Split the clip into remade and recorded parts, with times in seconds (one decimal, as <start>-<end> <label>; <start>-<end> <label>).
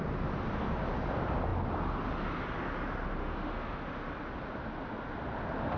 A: 0.0-3.2 recorded; 3.2-3.8 remade; 3.8-5.8 recorded